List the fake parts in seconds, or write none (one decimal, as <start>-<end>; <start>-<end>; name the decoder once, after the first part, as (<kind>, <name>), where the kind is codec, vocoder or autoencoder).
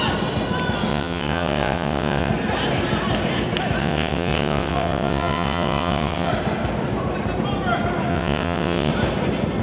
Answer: 0.9-2.3 (vocoder, WaveNeXt); 3.8-6.3; 8.1-8.9